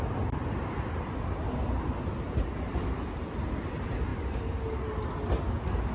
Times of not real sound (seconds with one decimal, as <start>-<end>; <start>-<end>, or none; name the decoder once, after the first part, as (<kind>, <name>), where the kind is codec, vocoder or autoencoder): none